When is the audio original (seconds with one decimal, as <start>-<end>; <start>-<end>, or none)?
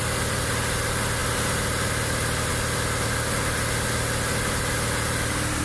0.0-5.6